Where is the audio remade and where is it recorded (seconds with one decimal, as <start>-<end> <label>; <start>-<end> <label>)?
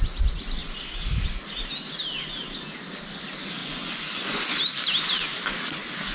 0.0-3.6 recorded; 3.6-4.6 remade; 4.6-6.1 recorded